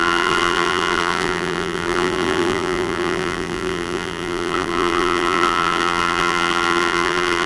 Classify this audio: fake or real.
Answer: fake